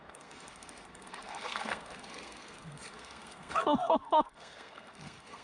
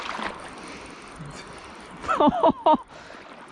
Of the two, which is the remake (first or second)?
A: first